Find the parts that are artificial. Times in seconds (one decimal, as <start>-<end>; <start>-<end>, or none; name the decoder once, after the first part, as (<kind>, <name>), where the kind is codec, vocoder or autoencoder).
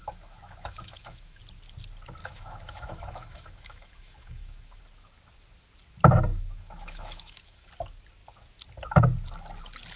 0.0-1.4 (autoencoder, DAC-VAE); 2.2-4.8; 6.3-7.7